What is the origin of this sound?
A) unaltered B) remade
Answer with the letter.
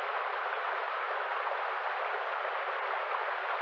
A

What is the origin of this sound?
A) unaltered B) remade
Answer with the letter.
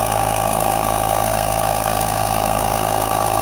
B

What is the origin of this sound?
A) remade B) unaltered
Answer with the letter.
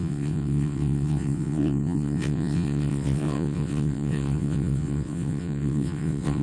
A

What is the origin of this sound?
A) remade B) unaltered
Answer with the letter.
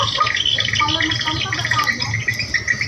B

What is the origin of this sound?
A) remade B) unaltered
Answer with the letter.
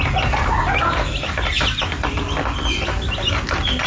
B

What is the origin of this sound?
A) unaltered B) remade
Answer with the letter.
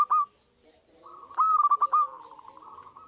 A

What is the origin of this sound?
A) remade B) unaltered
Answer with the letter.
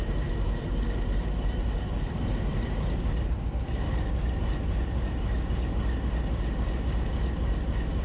A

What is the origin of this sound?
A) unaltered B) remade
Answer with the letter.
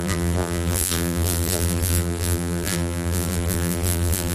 B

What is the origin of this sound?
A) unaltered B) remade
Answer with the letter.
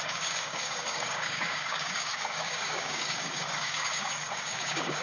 B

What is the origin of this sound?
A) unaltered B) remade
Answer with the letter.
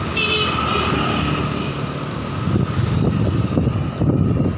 A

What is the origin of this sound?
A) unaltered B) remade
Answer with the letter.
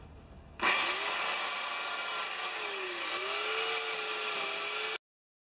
A